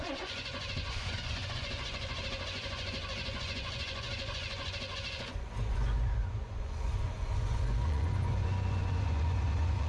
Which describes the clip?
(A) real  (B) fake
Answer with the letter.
B